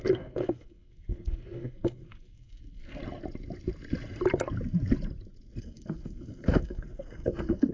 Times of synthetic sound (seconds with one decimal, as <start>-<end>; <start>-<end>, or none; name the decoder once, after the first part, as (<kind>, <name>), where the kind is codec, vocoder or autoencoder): 0.0-3.0 (codec, SNAC); 5.6-7.7